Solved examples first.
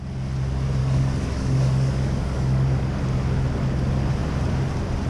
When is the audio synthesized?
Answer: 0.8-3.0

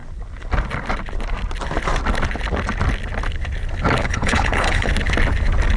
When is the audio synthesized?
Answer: 4.0-4.9

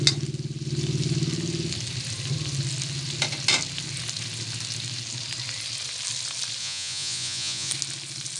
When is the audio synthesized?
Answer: 6.6-7.7

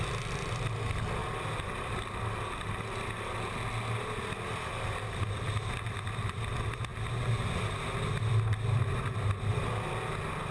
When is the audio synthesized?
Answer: none